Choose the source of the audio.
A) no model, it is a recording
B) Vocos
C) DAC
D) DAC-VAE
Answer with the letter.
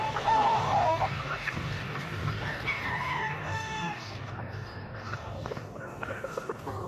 C